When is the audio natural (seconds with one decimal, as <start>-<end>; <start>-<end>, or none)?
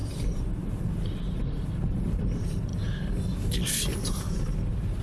0.6-5.0